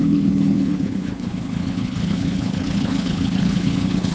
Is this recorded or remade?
remade